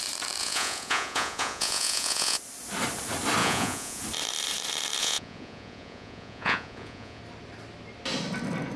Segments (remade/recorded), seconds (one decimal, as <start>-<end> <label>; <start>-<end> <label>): 0.0-0.4 recorded; 0.4-2.4 remade; 2.4-3.4 recorded; 3.4-4.0 remade; 4.0-5.0 recorded; 5.0-7.2 remade; 7.2-8.8 recorded